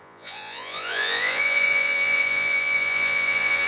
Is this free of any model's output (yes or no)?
no